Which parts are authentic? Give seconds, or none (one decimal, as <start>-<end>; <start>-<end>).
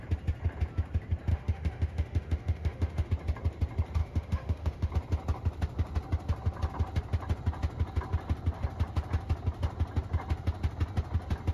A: 0.0-1.3; 3.1-4.0; 4.9-11.5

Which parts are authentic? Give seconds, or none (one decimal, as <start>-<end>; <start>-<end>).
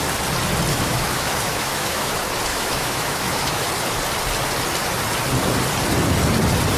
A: 0.0-0.7; 2.1-2.5; 3.7-6.8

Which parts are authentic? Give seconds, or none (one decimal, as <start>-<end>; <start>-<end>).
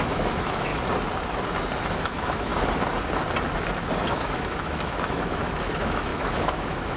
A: 0.7-2.0; 2.5-4.1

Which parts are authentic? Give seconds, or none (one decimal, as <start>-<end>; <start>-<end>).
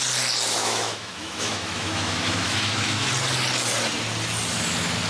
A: 0.0-0.6; 3.1-5.1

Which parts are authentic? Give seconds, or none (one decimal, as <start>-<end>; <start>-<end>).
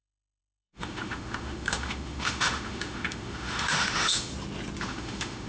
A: 4.3-4.8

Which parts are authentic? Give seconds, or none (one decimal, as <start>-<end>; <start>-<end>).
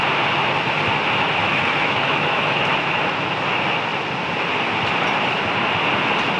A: 0.0-1.4; 3.3-6.4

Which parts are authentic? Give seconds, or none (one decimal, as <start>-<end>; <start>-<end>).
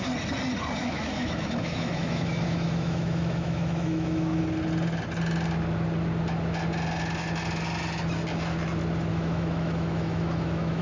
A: 0.0-0.8; 4.4-9.1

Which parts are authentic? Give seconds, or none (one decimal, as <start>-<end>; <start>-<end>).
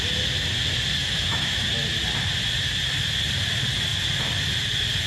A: 0.0-1.0; 1.7-5.1